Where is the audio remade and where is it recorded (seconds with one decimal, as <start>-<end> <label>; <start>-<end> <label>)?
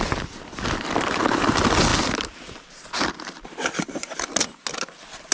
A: 0.0-5.3 recorded